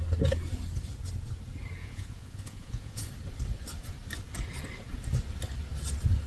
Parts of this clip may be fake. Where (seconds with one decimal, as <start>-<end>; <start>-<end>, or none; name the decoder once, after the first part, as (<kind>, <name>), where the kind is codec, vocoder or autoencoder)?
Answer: 1.8-3.1 (vocoder, Vocos)